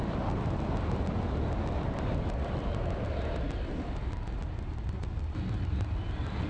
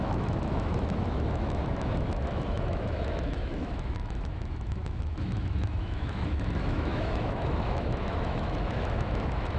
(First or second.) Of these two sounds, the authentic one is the first